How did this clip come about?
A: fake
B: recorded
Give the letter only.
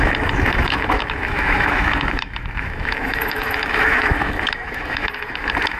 A